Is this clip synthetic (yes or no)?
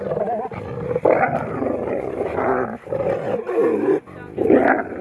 no